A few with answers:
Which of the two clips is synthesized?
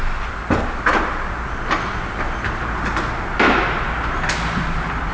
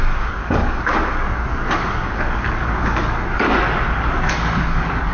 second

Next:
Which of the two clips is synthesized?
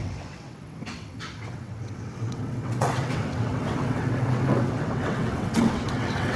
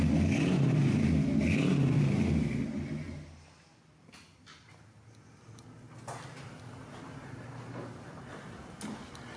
first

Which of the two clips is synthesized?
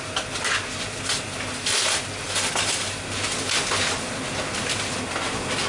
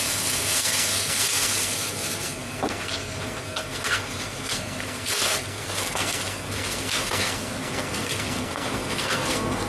second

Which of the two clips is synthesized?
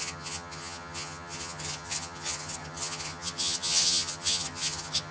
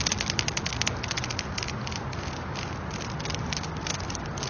first